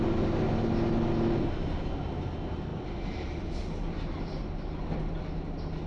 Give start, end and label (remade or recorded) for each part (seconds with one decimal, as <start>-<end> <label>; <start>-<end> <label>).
0.0-5.9 recorded